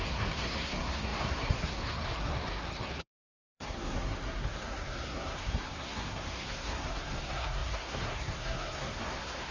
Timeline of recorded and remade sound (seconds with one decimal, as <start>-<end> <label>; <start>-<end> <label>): 0.0-9.5 remade